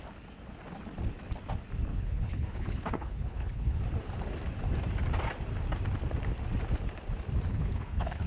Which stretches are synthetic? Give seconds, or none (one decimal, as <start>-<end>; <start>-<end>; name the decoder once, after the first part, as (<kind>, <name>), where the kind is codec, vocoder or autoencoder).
1.9-3.8 (codec, HILCodec); 7.5-8.3